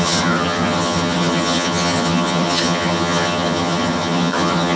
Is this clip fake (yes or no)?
yes